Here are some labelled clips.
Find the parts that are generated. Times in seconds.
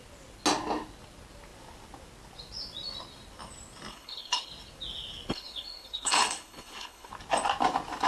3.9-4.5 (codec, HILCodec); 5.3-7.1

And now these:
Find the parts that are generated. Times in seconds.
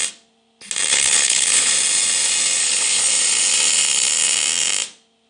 0.9-1.7 (codec, HILCodec); 2.6-3.1